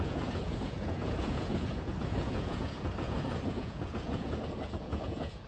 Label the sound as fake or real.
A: fake